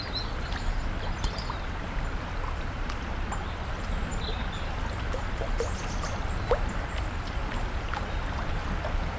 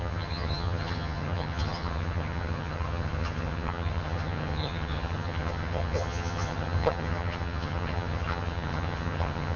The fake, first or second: second